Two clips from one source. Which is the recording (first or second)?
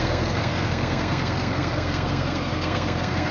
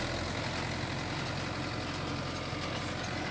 second